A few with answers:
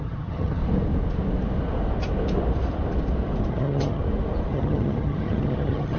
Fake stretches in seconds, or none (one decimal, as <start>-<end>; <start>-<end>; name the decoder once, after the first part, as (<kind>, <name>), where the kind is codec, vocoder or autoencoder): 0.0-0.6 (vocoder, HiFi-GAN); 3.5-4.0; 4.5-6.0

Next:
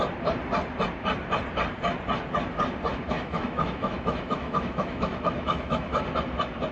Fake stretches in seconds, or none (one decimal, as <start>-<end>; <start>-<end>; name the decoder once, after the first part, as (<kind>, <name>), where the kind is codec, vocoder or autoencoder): 2.9-6.0 (autoencoder, DAC-VAE)

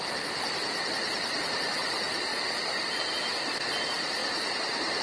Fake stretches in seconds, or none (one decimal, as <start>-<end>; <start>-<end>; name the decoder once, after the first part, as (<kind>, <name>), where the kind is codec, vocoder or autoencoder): 2.3-3.1 (vocoder, BigVGAN v2); 4.2-5.0